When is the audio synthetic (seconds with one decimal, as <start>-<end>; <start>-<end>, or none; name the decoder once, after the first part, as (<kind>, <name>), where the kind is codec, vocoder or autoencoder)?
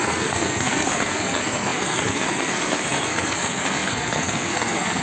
0.0-5.0 (codec, SNAC)